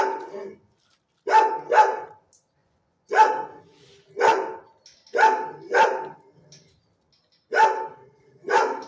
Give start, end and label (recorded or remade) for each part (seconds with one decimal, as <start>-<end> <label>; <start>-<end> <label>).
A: 0.0-2.6 recorded; 2.6-3.6 remade; 3.6-8.9 recorded

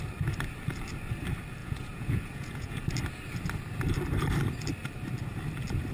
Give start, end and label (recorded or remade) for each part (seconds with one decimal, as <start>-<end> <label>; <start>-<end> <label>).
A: 0.0-1.6 recorded; 1.6-2.8 remade; 2.8-5.9 recorded

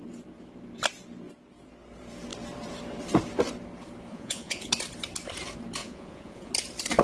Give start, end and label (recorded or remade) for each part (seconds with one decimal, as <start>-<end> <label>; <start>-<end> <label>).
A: 0.0-4.1 recorded; 4.1-4.7 remade; 4.7-5.8 recorded; 5.8-6.5 remade; 6.5-7.0 recorded

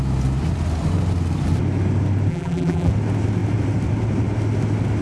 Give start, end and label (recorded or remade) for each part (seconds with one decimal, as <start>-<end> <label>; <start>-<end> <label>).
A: 0.0-2.3 recorded; 2.3-2.9 remade; 2.9-5.0 recorded

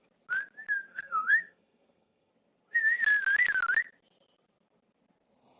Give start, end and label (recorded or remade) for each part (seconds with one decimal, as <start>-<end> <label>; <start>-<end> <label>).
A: 0.0-0.9 recorded; 0.9-2.3 remade; 2.3-5.6 recorded

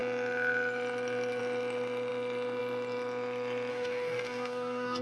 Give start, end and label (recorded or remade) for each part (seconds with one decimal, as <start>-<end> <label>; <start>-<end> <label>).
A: 0.0-3.7 recorded; 3.7-5.0 remade